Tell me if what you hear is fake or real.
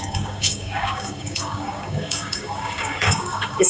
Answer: fake